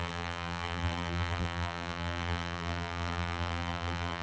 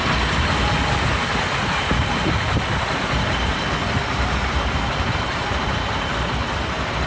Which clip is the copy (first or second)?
first